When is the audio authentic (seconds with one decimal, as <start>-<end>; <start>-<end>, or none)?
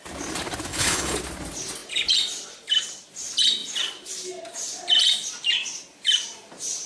0.0-0.7; 1.2-6.9